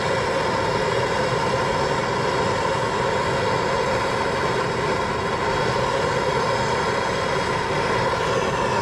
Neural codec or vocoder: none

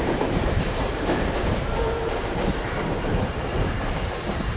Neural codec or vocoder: vocoder, BigVGAN v2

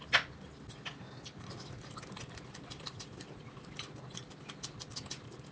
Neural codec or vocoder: none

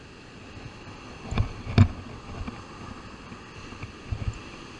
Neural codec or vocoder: none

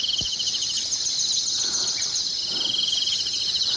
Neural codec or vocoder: none